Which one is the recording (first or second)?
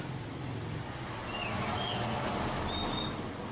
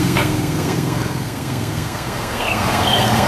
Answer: first